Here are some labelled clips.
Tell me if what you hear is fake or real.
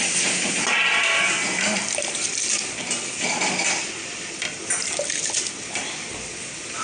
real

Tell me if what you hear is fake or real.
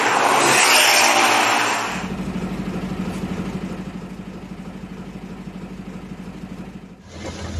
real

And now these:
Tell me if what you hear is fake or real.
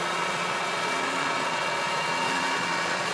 fake